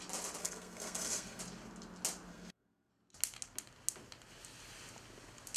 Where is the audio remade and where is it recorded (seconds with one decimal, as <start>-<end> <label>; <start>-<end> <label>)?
0.0-0.4 recorded; 0.4-1.4 remade; 1.4-2.3 recorded; 2.3-2.9 remade; 2.9-5.6 recorded